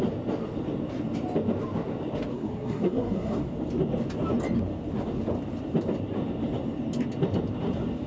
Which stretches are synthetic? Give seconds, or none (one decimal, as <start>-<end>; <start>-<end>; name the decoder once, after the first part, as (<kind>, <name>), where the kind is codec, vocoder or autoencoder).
2.3-3.4 (codec, SNAC)

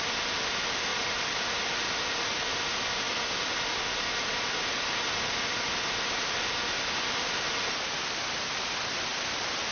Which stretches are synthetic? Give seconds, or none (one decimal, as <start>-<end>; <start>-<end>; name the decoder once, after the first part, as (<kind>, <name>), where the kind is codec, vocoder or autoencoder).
0.9-3.9 (vocoder, BigVGAN v2); 9.1-9.7

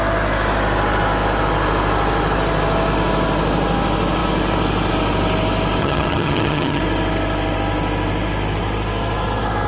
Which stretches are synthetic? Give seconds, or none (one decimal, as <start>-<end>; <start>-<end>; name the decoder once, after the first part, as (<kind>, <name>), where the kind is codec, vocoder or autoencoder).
5.8-6.8 (vocoder, HiFi-GAN)

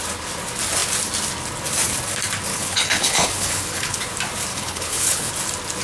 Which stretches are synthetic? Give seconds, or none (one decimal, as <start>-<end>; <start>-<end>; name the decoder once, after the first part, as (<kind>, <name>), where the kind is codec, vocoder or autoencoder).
2.5-4.0 (codec, HILCodec); 4.5-5.3